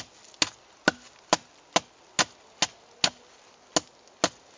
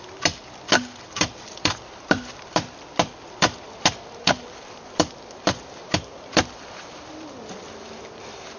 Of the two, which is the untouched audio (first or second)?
first